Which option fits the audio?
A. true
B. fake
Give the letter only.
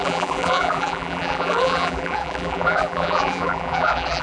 B